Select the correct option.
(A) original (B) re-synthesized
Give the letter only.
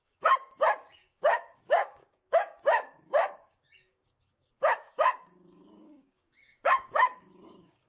B